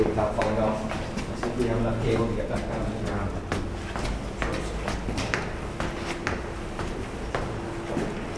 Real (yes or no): yes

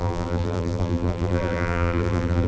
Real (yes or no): no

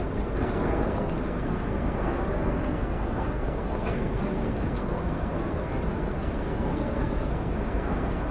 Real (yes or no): no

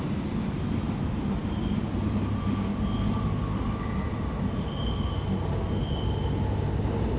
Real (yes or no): yes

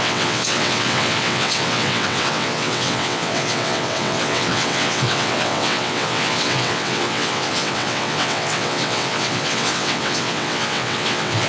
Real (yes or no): no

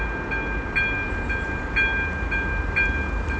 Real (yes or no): yes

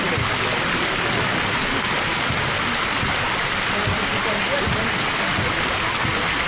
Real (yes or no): yes